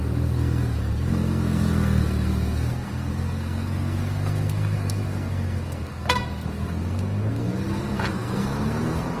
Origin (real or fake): fake